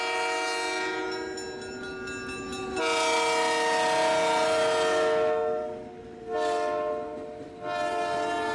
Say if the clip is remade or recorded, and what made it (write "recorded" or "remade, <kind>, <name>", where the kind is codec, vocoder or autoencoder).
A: recorded